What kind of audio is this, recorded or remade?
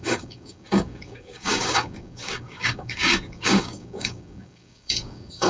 remade